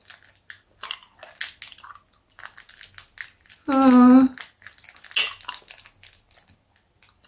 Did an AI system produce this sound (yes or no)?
no